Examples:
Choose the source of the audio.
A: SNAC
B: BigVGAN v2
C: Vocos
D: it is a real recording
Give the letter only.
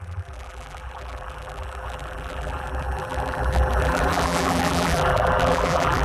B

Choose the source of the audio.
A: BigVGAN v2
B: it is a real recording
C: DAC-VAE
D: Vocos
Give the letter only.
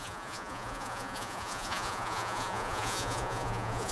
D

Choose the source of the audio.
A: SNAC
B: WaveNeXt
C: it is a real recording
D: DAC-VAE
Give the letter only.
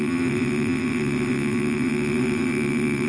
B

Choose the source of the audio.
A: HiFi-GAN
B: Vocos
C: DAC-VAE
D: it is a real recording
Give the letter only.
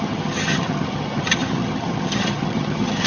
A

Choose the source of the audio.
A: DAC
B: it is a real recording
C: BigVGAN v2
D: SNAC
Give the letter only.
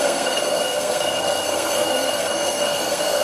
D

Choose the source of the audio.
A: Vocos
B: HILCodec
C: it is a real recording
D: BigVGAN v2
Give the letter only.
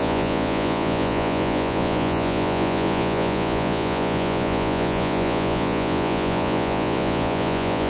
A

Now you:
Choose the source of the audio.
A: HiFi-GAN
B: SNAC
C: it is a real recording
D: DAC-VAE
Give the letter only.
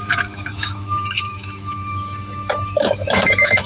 D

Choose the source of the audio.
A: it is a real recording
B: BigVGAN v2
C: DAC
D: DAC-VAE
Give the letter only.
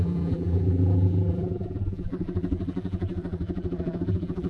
B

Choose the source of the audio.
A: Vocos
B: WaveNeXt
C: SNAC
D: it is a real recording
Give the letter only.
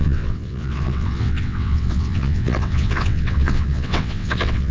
B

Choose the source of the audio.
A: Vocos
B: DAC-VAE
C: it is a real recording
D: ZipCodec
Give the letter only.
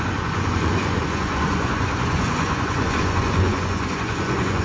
A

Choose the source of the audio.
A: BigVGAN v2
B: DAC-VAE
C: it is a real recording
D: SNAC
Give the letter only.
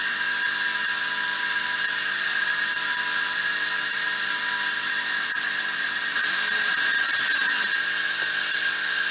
A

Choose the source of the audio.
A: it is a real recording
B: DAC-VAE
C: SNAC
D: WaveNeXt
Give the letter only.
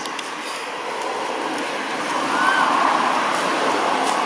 A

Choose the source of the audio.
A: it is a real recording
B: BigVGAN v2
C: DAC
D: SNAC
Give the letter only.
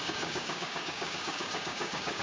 C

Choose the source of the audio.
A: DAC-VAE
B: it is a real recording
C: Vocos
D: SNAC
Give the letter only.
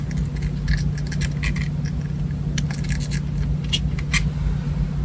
B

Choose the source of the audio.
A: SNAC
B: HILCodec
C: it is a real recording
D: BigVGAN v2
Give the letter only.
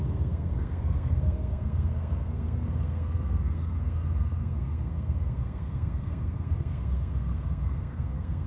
A